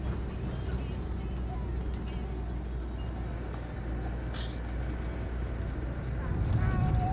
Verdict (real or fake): real